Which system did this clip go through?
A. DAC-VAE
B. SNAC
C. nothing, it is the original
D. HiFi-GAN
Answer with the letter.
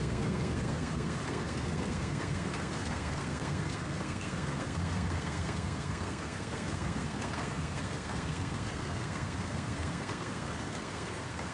B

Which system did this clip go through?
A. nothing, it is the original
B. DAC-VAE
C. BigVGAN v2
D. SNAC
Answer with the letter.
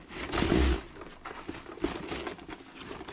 A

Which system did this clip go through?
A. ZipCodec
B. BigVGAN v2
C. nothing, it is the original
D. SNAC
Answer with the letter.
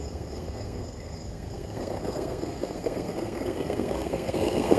D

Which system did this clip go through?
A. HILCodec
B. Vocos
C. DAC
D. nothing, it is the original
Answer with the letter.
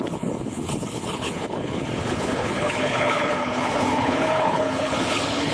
A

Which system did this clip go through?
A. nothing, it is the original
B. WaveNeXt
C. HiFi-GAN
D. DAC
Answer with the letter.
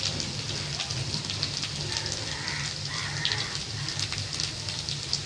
A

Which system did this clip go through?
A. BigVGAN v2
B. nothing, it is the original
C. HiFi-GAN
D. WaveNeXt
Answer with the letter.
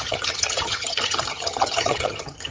C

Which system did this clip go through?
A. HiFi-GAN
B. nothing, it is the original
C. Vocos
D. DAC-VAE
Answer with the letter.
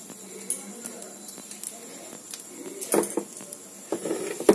B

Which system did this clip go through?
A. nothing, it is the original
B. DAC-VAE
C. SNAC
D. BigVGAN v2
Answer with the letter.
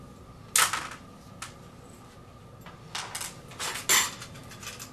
A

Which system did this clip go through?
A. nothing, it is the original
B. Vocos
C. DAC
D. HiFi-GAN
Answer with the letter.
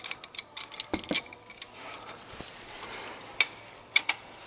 A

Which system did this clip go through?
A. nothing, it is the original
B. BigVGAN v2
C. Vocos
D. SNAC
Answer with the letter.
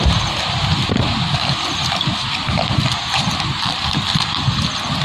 B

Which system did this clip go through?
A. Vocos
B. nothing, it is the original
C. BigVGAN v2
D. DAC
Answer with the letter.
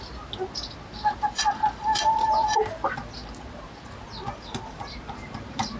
B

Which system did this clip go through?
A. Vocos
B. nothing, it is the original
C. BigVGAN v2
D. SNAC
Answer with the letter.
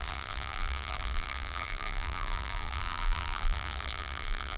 C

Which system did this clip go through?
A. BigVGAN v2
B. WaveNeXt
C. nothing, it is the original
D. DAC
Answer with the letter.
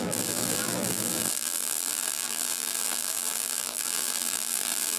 A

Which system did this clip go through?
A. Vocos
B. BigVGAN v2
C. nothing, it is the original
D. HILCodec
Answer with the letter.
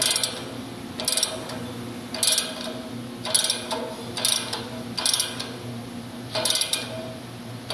C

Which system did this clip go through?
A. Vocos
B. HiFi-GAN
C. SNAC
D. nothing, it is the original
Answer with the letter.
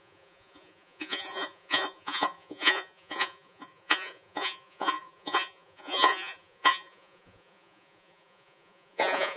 A